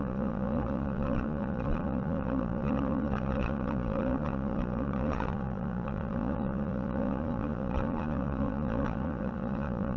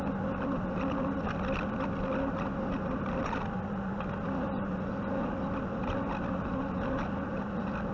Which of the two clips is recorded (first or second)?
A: second